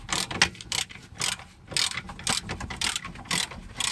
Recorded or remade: recorded